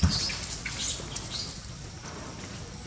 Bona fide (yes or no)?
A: yes